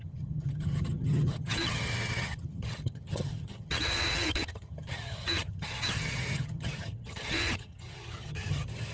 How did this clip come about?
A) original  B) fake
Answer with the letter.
B